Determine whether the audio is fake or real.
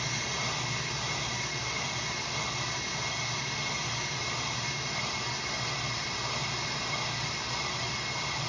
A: real